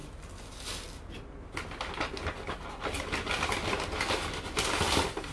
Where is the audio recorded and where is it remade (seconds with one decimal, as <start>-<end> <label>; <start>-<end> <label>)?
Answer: 0.0-5.3 recorded